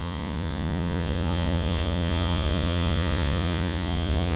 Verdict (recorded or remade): remade